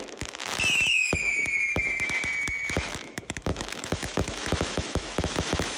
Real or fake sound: fake